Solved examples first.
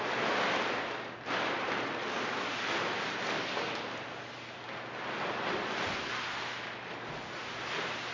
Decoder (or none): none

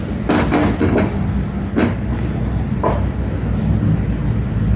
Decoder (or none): none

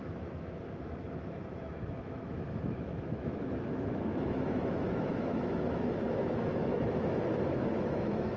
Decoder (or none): autoencoder, DAC-VAE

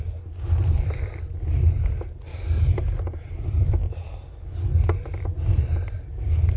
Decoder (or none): none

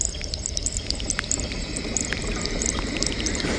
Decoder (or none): vocoder, BigVGAN v2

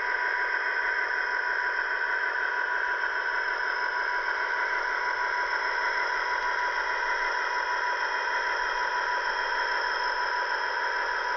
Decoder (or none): none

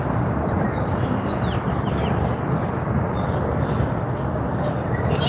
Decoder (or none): none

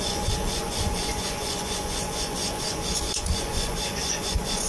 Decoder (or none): vocoder, Vocos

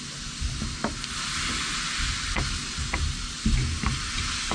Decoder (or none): none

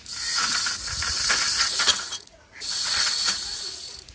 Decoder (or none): vocoder, Vocos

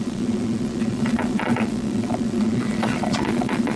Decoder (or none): vocoder, Vocos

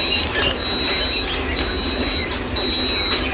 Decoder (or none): none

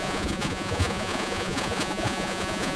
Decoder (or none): vocoder, Vocos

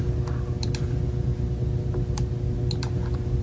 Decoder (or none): none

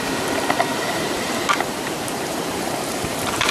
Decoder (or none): vocoder, BigVGAN v2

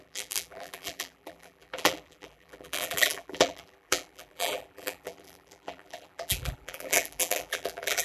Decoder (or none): vocoder, BigVGAN v2